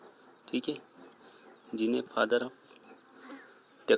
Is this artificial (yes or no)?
no